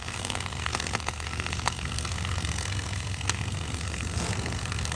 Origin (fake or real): fake